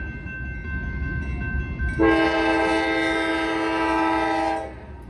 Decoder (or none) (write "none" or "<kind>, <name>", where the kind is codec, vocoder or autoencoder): none